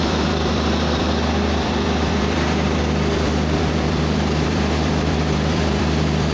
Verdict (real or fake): fake